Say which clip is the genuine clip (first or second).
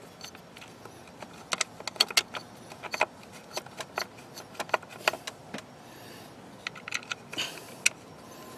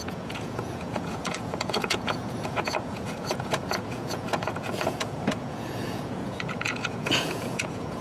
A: first